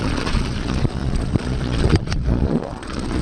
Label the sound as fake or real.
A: fake